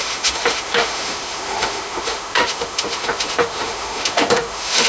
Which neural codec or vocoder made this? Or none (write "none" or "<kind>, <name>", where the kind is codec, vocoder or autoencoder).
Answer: autoencoder, DAC-VAE